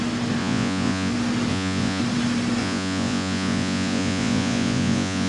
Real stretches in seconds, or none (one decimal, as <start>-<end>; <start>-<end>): 0.0-0.4; 1.1-1.5; 2.0-2.6